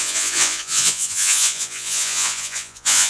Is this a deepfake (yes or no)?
yes